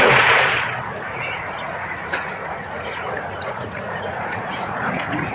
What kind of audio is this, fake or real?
fake